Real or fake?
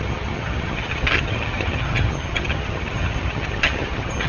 fake